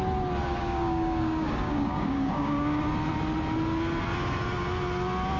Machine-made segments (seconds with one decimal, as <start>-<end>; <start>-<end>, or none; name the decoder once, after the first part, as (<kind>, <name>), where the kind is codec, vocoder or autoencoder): 0.4-2.8 (codec, DAC)